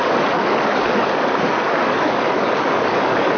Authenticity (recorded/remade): remade